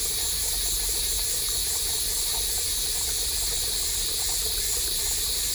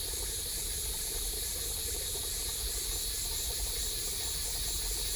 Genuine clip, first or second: first